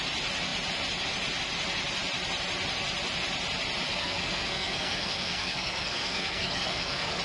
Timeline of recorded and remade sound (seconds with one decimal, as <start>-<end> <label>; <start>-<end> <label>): 0.0-3.9 recorded; 3.9-7.2 remade

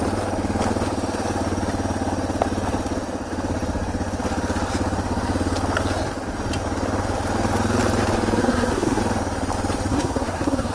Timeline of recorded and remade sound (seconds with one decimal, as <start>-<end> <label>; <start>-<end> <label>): 0.0-8.4 recorded; 8.4-9.0 remade; 9.0-9.9 recorded; 9.9-10.7 remade

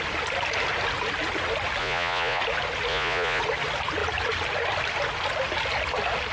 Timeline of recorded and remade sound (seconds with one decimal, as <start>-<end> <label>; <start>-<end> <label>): 0.0-1.8 recorded; 1.8-2.4 remade; 2.4-2.9 recorded; 2.9-3.4 remade; 3.4-6.3 recorded